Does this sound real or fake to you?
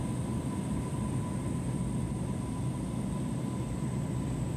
real